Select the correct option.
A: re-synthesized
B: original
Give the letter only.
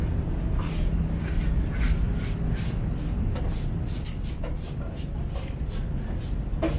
B